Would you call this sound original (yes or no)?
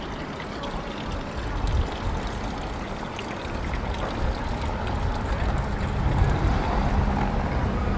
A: yes